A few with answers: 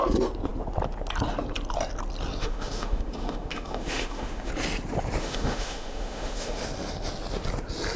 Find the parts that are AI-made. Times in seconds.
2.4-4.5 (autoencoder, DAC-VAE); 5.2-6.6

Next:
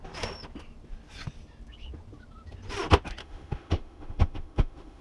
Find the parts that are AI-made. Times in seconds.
3.2-5.0 (autoencoder, DAC-VAE)

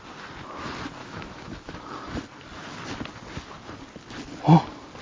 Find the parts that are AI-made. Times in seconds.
1.0-1.7 (autoencoder, DAC-VAE)

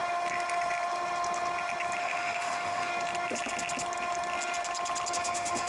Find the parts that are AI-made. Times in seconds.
2.0-2.9 (autoencoder, DAC-VAE); 5.1-5.7